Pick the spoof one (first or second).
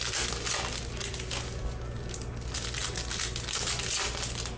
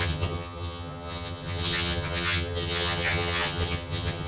second